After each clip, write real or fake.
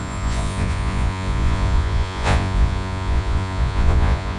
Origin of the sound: fake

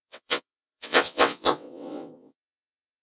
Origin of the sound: fake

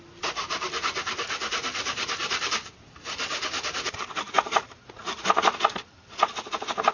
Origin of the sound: fake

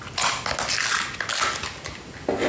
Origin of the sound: real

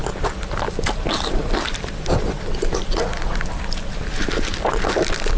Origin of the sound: real